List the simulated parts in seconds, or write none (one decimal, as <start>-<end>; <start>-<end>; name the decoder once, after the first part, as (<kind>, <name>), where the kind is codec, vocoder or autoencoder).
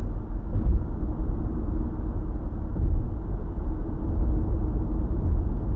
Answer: 2.7-3.3 (vocoder, BigVGAN v2)